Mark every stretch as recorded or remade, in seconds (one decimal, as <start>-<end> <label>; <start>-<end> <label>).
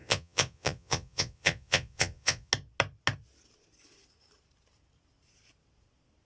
0.0-2.5 remade; 2.5-6.3 recorded